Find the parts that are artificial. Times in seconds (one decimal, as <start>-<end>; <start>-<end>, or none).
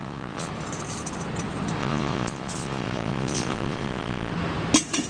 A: 0.0-0.5; 1.8-4.3